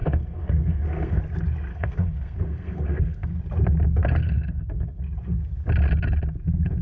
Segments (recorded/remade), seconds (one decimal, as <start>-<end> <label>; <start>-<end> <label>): 0.0-1.2 remade; 1.2-1.7 recorded; 1.7-3.3 remade; 3.3-4.2 recorded; 4.2-5.0 remade; 5.0-6.8 recorded